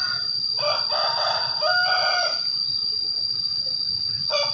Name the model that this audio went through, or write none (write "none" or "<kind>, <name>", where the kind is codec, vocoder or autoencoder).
none